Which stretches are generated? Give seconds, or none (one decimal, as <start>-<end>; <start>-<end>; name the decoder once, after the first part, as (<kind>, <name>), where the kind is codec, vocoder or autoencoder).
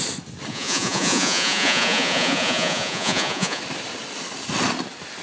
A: 0.5-3.6 (vocoder, Vocos)